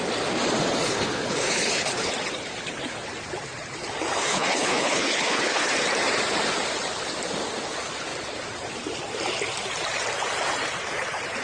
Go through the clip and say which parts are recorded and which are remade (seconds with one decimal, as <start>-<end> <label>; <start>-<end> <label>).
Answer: 0.0-0.8 recorded; 0.8-2.1 remade; 2.1-4.2 recorded; 4.2-5.7 remade; 5.7-11.4 recorded